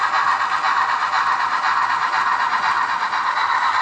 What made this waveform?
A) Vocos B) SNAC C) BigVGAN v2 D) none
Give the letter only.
D